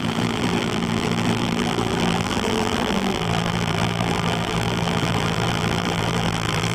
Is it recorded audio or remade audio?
remade